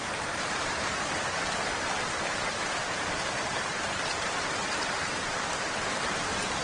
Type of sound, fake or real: fake